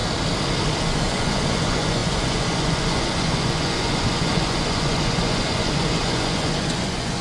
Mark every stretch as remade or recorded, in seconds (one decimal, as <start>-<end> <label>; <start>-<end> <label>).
0.0-0.8 recorded; 0.8-7.2 remade